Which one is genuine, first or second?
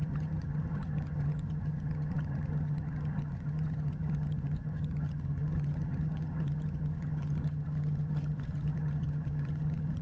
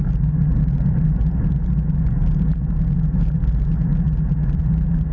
second